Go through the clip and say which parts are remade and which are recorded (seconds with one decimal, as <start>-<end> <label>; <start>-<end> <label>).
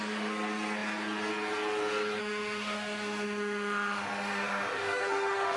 0.0-2.2 recorded; 2.2-5.6 remade